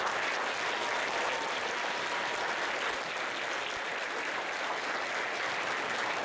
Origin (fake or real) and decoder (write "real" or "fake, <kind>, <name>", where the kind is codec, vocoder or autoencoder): real